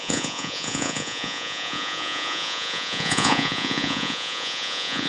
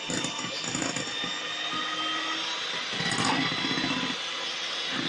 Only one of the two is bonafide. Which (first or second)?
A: second